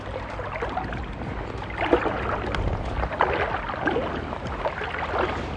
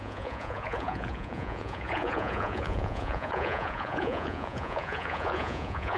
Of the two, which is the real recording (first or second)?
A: first